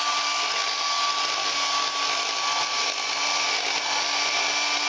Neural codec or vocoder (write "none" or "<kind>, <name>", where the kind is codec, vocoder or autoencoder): none